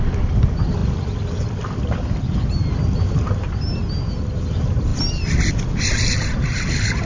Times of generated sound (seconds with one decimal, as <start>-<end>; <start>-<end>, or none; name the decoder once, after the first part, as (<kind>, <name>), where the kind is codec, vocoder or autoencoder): none